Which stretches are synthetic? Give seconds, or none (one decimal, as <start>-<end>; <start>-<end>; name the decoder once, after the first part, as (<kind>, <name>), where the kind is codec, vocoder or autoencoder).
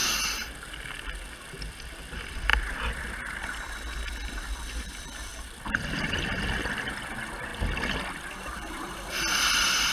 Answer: 1.7-2.5 (vocoder, BigVGAN v2); 3.6-7.5; 8.1-9.9